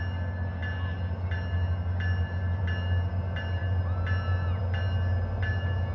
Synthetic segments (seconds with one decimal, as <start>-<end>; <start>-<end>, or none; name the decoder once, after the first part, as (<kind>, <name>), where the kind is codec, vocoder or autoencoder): none